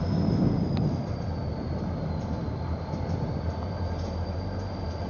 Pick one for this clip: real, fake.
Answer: real